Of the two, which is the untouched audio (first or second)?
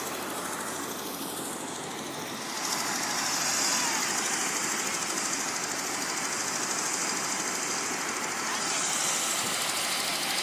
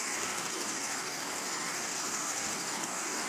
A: first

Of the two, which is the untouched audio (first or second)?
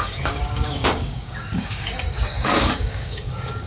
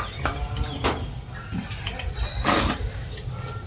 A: second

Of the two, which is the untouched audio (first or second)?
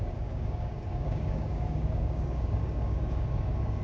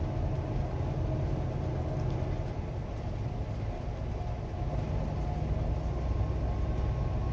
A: second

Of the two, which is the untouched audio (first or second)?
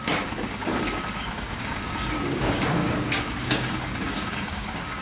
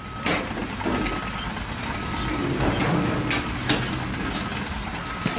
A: second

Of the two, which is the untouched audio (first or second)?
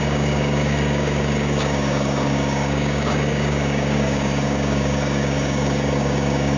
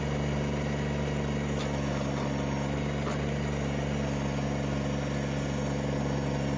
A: second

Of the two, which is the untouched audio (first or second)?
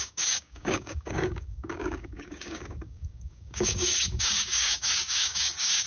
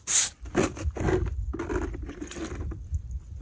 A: second